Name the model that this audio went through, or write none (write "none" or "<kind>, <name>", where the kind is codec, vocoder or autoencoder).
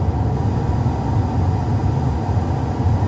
none